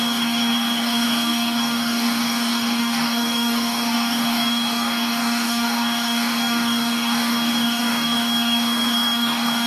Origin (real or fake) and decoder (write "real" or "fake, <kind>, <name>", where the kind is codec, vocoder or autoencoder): fake, codec, DAC